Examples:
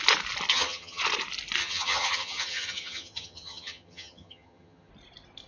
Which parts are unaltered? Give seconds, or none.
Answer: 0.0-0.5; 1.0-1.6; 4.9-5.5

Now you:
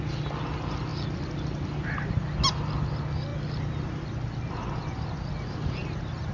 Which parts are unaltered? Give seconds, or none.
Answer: 0.0-6.3

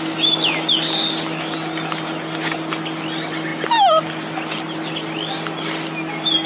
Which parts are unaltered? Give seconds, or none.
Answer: 0.0-6.5